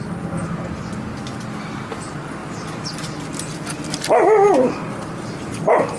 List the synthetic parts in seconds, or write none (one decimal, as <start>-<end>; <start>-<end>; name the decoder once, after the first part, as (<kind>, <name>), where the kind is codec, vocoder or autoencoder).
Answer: none